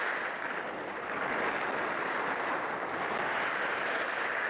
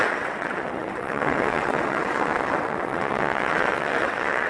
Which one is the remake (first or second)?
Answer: second